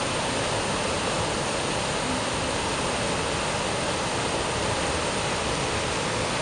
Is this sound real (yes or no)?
yes